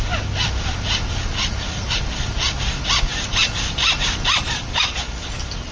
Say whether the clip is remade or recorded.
remade